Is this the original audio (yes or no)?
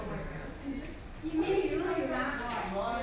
yes